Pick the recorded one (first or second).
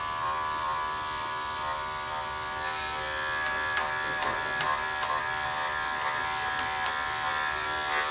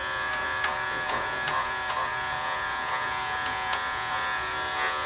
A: first